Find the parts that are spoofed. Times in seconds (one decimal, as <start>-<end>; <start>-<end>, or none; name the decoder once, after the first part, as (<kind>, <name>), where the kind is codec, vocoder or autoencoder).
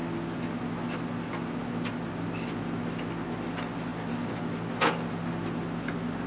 none